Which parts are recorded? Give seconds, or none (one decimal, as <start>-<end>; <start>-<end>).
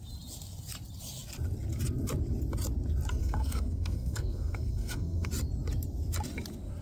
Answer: 0.0-3.2; 5.3-6.8